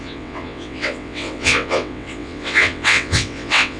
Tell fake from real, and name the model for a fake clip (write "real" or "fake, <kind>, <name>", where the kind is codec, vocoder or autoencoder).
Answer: fake, vocoder, WaveNeXt